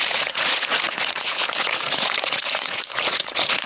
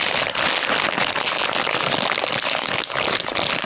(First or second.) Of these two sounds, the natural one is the second